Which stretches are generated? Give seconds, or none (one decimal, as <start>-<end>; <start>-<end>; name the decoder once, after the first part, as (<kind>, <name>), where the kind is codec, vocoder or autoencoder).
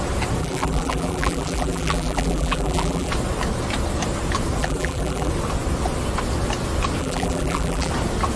0.4-3.1 (vocoder, BigVGAN v2); 4.6-5.3; 7.0-7.9